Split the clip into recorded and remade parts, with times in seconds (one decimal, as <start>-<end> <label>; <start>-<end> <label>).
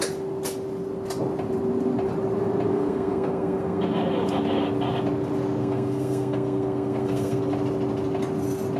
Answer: 0.0-2.7 recorded; 2.7-3.8 remade; 3.8-5.6 recorded; 5.6-7.4 remade; 7.4-8.8 recorded